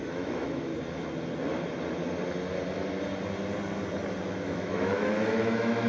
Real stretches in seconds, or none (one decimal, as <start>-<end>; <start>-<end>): 0.7-4.2